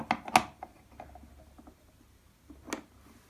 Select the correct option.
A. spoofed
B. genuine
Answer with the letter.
B